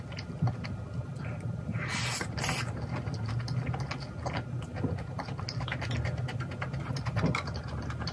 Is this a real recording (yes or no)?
yes